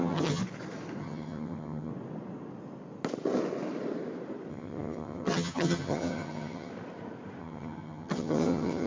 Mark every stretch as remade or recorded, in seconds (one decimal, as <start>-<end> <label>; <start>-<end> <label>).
0.0-0.4 remade; 0.4-1.0 recorded; 1.0-1.9 remade; 1.9-4.5 recorded; 4.5-6.7 remade; 6.7-7.4 recorded; 7.4-8.9 remade